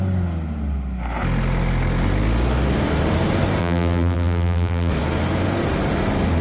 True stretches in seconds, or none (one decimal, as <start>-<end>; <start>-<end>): 0.0-3.6; 4.9-6.4